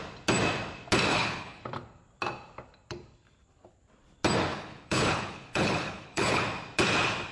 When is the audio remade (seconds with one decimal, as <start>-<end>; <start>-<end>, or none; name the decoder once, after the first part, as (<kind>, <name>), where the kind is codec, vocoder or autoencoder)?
1.1-1.6 (codec, HILCodec); 4.5-6.4